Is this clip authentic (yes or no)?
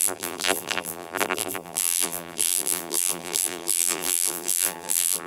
no